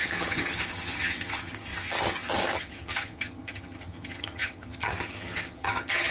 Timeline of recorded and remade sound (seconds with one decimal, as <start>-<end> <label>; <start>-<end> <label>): 0.0-6.1 remade